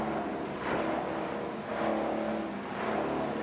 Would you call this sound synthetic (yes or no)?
no